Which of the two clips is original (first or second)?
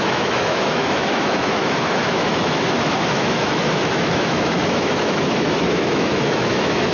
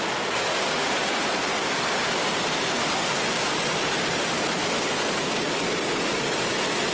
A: second